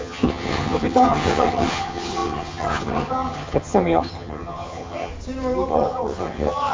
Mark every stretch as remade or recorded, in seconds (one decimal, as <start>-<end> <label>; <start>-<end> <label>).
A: 0.0-5.1 remade; 5.1-5.7 recorded; 5.7-6.7 remade